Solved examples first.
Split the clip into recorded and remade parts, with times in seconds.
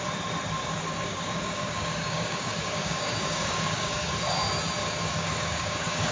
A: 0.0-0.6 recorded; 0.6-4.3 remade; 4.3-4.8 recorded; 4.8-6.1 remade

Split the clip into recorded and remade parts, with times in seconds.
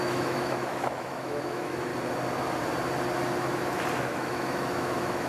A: 0.0-1.9 remade; 1.9-4.0 recorded; 4.0-5.3 remade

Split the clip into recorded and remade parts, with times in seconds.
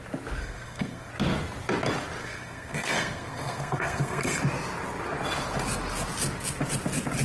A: 0.0-0.4 recorded; 0.4-1.1 remade; 1.1-2.2 recorded; 2.2-4.4 remade; 4.4-7.2 recorded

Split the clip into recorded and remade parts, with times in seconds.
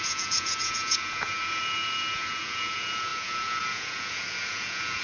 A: 0.0-5.0 remade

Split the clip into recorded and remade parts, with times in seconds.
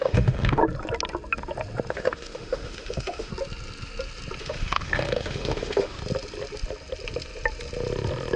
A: 0.0-0.6 remade; 0.6-1.9 recorded; 1.9-3.3 remade; 3.3-4.4 recorded; 4.4-6.0 remade; 6.0-8.4 recorded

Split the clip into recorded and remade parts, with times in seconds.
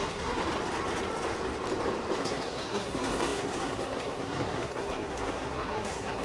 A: 0.0-0.4 remade; 0.4-2.2 recorded; 2.2-6.2 remade